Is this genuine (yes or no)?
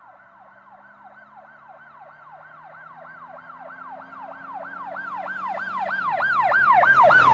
yes